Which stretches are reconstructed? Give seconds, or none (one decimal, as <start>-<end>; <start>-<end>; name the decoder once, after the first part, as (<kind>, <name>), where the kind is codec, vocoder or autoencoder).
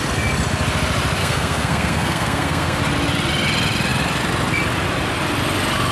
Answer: 1.2-2.8 (codec, SNAC)